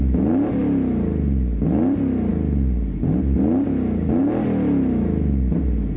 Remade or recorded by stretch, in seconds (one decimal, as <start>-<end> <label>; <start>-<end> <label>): 0.0-6.0 recorded